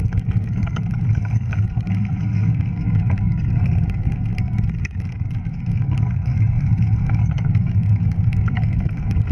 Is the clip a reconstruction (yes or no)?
yes